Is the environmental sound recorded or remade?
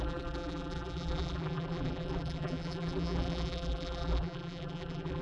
remade